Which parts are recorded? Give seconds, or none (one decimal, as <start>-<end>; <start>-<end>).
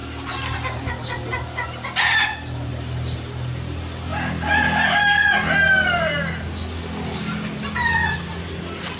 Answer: 0.0-9.0